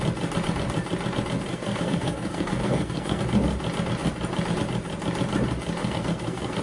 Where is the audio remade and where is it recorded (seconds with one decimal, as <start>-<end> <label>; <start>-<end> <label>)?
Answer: 0.0-1.5 recorded; 1.5-3.2 remade; 3.2-5.8 recorded; 5.8-6.6 remade